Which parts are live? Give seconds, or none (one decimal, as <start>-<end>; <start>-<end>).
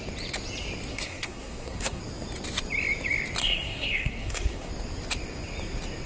0.0-0.9; 2.0-3.4; 4.7-6.1